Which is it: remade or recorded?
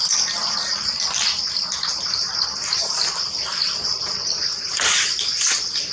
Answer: recorded